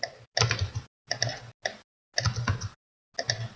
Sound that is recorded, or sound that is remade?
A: recorded